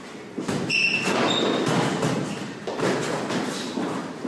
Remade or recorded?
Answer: recorded